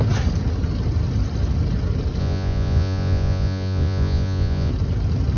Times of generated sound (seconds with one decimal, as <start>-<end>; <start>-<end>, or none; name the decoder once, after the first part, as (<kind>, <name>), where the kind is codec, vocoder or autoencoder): 2.2-4.7 (vocoder, Vocos)